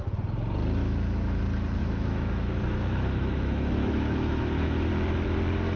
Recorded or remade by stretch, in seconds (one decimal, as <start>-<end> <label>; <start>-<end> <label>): 0.0-0.8 recorded; 0.8-1.4 remade; 1.4-1.8 recorded; 1.8-4.9 remade; 4.9-5.8 recorded

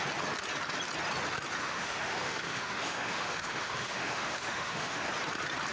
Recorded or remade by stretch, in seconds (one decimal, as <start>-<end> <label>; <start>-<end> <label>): 0.0-1.6 recorded; 1.6-5.0 remade; 5.0-5.7 recorded

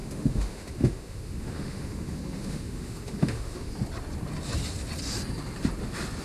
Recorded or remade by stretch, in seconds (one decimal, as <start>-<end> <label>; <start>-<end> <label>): 0.0-3.7 remade; 3.7-6.2 recorded

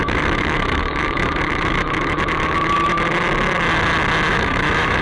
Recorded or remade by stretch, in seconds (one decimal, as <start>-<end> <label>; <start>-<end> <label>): 0.0-3.0 remade; 3.0-4.3 recorded; 4.3-5.0 remade